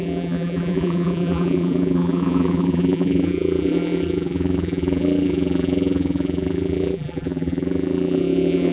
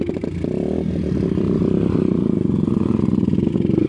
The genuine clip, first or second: second